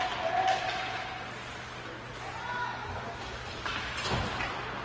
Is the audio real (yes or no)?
yes